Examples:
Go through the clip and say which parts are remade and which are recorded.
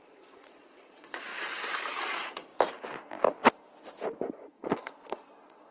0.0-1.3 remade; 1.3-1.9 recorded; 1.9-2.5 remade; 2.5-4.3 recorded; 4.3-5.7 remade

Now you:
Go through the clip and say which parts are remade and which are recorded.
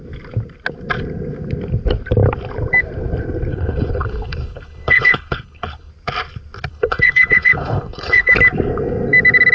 0.0-3.5 recorded; 3.5-5.9 remade; 5.9-6.7 recorded; 6.7-8.3 remade; 8.3-9.5 recorded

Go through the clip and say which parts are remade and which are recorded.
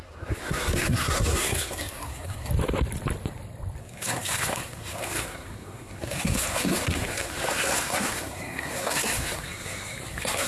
0.0-2.5 remade; 2.5-3.8 recorded; 3.8-10.5 remade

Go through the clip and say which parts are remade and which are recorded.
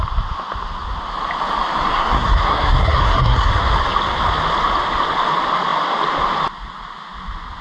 0.0-1.9 recorded; 1.9-3.5 remade; 3.5-7.6 recorded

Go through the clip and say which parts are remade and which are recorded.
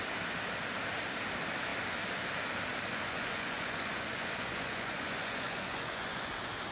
0.0-2.9 recorded; 2.9-6.3 remade; 6.3-6.7 recorded